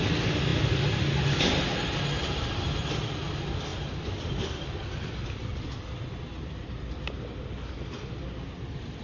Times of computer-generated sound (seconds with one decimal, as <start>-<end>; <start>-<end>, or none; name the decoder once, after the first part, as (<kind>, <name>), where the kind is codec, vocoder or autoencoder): none